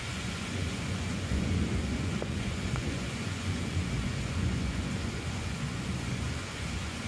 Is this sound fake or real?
fake